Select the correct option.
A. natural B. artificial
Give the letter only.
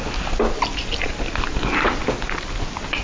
A